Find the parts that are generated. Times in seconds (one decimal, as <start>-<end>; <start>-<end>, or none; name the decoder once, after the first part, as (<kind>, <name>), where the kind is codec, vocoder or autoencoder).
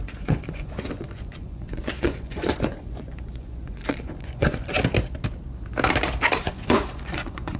0.0-4.8 (vocoder, Vocos); 6.4-7.6